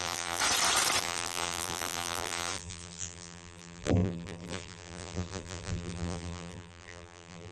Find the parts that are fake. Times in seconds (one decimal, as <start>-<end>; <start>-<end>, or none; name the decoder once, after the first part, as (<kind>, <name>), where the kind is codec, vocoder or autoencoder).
0.0-0.4 (vocoder, BigVGAN v2); 1.0-7.5